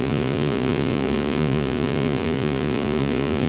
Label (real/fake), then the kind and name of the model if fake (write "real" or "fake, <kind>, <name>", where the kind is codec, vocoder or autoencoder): fake, vocoder, Vocos